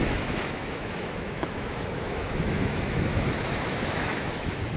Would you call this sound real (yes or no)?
no